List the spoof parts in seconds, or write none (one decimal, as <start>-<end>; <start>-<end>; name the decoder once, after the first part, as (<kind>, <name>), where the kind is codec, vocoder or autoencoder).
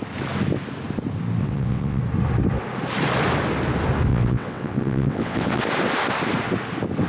1.4-2.0 (vocoder, WaveNeXt); 4.1-5.6